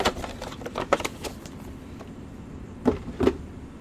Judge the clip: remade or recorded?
recorded